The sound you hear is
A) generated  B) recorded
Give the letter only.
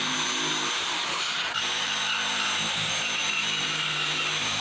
A